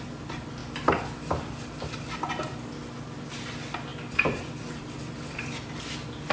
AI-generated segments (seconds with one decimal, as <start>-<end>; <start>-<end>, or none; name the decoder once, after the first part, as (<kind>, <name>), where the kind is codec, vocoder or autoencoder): none